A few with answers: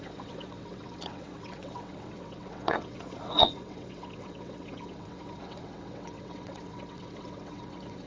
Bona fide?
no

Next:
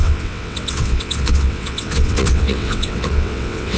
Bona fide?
no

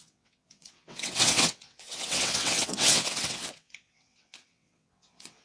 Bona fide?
no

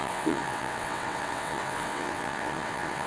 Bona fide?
no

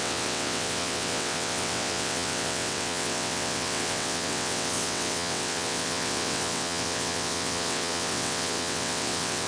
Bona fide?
no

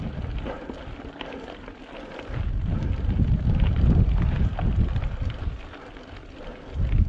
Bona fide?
yes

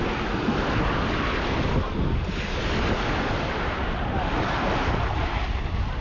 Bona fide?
yes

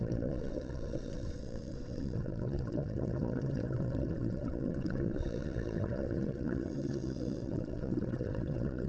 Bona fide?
no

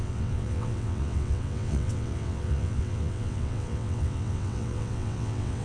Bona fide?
no